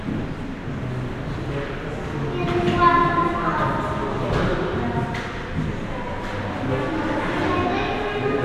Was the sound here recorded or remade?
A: recorded